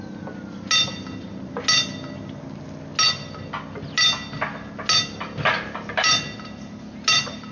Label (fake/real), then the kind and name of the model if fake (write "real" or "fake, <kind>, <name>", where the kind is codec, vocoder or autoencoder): real